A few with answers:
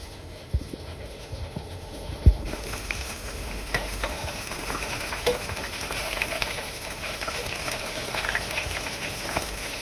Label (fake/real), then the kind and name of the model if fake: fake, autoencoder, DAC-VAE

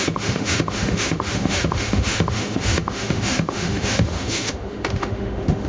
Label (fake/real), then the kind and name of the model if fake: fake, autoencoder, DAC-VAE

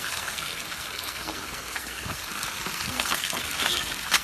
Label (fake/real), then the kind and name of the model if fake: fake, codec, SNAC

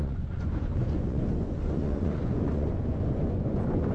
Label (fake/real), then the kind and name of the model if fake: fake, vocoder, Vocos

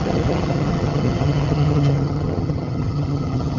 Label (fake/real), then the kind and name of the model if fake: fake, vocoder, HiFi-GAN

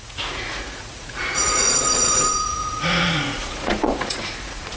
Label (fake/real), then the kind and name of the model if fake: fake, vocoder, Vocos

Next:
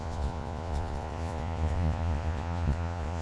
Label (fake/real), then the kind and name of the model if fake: fake, vocoder, Vocos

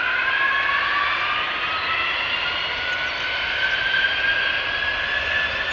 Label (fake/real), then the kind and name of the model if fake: real